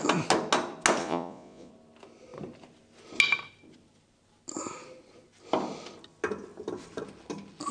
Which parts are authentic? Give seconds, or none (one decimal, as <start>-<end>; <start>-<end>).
0.0-1.0; 1.7-7.7